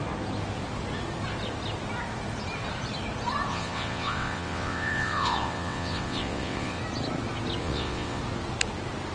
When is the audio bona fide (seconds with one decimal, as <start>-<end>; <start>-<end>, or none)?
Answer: 0.0-3.5; 6.8-7.6; 8.2-9.1